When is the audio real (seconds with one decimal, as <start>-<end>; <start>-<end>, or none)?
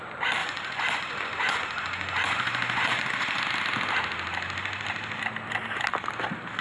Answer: 0.0-0.4; 3.4-6.6